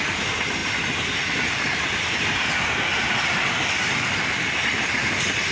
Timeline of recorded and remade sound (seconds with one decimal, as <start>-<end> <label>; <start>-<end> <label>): 0.0-5.5 recorded